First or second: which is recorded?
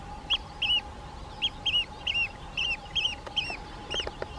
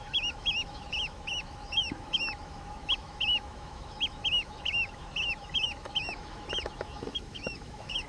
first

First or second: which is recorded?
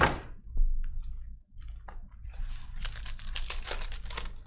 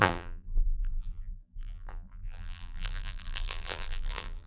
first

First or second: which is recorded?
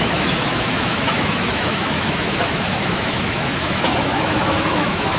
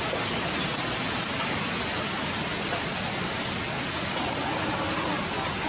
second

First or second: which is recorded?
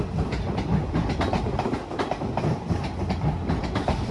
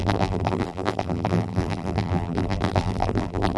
first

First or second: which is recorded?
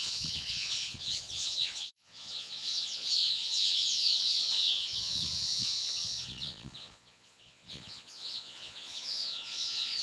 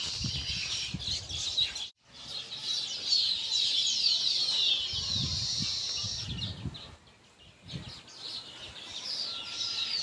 second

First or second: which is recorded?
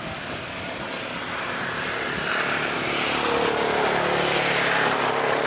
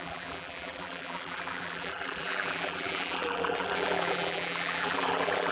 first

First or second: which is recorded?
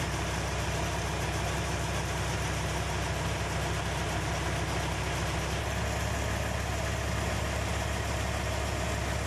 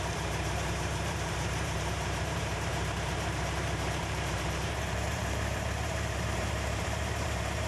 first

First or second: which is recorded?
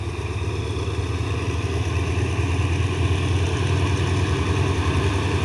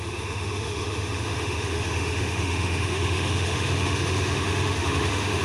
first